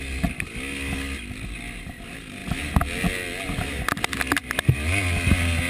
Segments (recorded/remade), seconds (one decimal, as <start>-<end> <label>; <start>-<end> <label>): 0.0-5.7 recorded